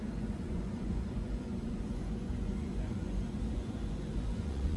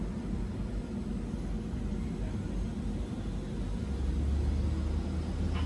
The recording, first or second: second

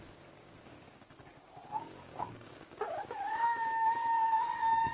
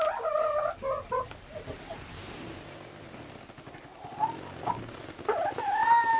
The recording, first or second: second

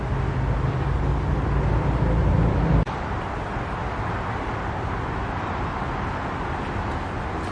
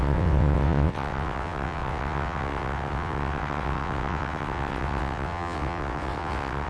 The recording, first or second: first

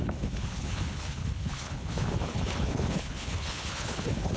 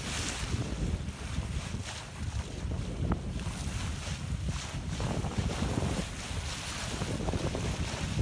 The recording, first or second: second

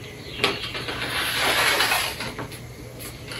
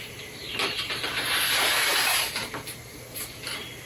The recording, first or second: first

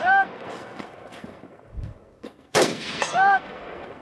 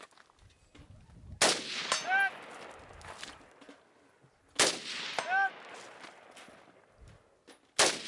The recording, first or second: second